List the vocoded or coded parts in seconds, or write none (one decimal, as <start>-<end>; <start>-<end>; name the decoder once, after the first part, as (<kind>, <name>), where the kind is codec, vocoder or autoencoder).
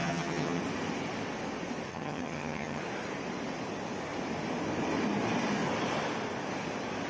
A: 0.0-0.6 (vocoder, HiFi-GAN); 1.9-2.8